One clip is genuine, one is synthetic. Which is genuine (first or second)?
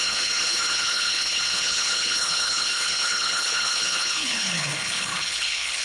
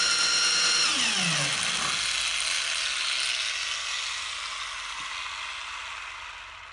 second